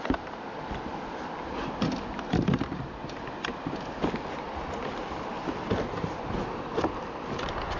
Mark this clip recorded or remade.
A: recorded